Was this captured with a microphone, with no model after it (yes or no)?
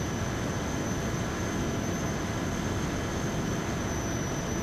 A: yes